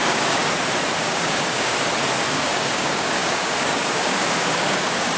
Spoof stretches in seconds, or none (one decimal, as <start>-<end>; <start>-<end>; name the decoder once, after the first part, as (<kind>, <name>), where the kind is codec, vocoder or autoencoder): 0.0-0.4 (codec, DAC); 1.0-1.7; 2.3-5.2